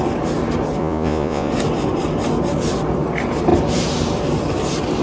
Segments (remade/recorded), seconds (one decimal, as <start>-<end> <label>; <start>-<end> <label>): 0.0-0.8 recorded; 0.8-1.5 remade; 1.5-5.0 recorded